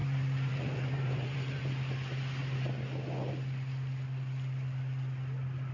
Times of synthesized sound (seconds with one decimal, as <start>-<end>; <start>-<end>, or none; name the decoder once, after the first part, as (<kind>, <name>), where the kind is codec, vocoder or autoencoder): 0.0-1.6 (vocoder, BigVGAN v2)